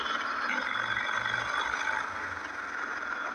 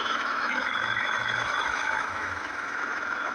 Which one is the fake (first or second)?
second